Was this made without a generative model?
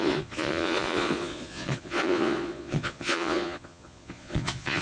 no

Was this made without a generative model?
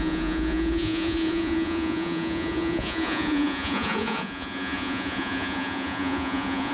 no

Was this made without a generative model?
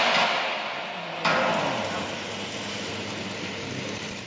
yes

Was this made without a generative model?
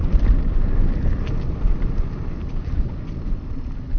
yes